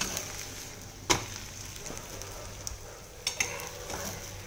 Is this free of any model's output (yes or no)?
yes